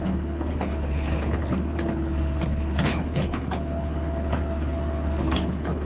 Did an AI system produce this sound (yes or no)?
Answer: yes